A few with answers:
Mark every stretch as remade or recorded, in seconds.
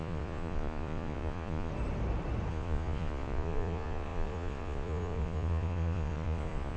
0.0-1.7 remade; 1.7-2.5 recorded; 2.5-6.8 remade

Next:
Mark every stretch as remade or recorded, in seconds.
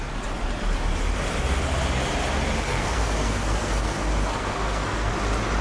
0.0-2.7 recorded; 2.7-5.1 remade; 5.1-5.6 recorded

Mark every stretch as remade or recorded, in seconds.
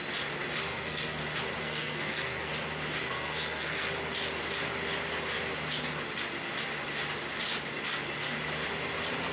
0.0-0.7 recorded; 0.7-1.2 remade; 1.2-1.6 recorded; 1.6-2.5 remade; 2.5-3.0 recorded; 3.0-3.9 remade; 3.9-9.3 recorded